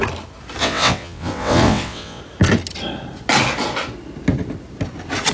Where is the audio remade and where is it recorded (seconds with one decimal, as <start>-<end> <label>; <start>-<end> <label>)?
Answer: 0.0-0.6 recorded; 0.6-2.2 remade; 2.2-5.3 recorded